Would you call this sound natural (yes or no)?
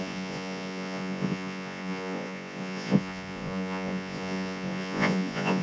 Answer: no